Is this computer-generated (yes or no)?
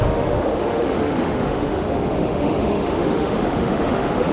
yes